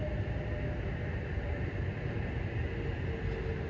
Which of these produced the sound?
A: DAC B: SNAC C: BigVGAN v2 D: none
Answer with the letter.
D